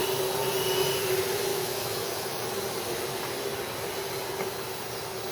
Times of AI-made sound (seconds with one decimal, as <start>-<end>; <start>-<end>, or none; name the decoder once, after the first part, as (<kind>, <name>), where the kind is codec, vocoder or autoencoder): 1.5-2.5 (autoencoder, DAC-VAE)